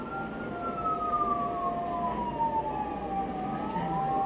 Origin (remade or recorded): recorded